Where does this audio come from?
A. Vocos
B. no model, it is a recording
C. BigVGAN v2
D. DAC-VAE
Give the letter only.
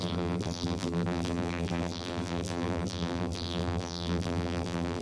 C